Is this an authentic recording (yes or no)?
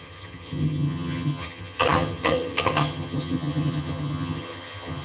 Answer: no